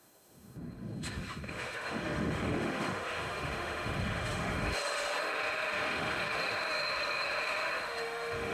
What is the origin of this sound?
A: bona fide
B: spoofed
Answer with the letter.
B